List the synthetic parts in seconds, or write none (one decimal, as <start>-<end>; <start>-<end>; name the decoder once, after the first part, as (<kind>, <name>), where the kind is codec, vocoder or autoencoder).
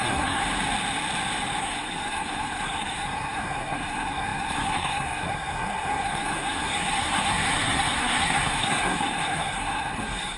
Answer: 0.0-0.4 (codec, SNAC); 1.6-10.4